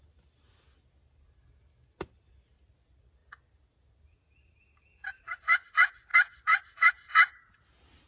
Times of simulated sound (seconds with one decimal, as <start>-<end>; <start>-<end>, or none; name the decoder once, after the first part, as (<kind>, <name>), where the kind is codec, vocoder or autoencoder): none